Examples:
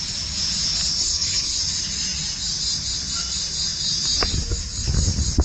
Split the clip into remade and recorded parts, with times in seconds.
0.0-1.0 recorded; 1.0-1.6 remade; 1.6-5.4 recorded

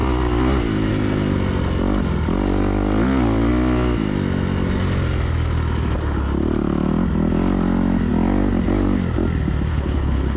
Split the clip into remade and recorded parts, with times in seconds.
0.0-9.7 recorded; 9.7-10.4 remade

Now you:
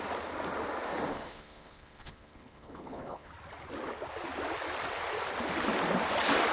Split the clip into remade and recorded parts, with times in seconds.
0.0-1.1 recorded; 1.1-3.3 remade; 3.3-6.5 recorded